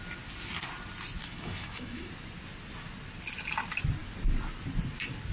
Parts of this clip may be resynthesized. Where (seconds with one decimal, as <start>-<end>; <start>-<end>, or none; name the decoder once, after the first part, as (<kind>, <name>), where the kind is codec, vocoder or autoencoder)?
1.2-2.1 (autoencoder, DAC-VAE)

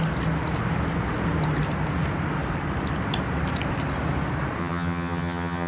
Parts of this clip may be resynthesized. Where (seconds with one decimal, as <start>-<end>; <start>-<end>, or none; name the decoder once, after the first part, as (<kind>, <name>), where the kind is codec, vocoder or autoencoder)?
4.6-5.7 (vocoder, HiFi-GAN)